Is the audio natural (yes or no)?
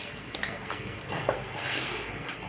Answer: no